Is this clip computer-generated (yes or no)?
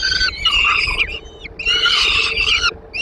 no